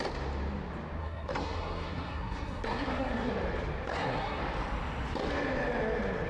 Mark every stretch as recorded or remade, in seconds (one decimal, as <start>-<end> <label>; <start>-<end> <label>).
0.0-1.0 recorded; 1.0-3.3 remade; 3.3-3.9 recorded; 3.9-4.4 remade; 4.4-6.3 recorded